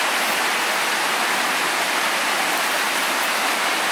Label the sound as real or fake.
real